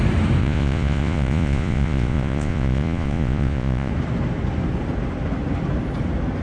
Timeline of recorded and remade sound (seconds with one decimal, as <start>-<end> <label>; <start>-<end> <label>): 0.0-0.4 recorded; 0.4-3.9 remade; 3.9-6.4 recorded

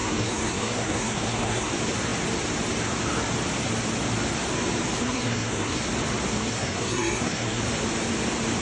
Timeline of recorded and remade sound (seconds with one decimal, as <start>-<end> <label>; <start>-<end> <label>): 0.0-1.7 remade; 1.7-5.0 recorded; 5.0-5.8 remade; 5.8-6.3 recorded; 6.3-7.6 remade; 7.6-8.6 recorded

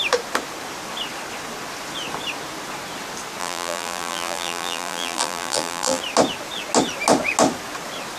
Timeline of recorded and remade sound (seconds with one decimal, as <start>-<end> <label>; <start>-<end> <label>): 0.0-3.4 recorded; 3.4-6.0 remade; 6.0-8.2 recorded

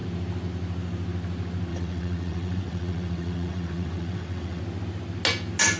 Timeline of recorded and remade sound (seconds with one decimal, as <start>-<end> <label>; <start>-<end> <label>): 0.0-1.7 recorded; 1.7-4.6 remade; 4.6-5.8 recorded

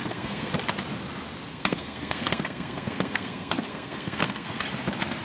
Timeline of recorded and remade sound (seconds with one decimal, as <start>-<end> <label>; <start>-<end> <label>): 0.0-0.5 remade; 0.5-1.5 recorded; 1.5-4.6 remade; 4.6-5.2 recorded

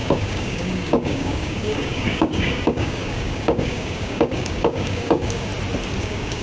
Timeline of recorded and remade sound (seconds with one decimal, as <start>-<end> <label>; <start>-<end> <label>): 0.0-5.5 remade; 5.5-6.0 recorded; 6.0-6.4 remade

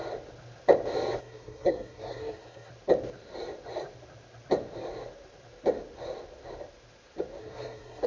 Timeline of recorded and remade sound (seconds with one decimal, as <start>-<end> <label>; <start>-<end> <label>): 0.0-1.2 recorded; 1.2-2.7 remade; 2.7-7.4 recorded; 7.4-8.1 remade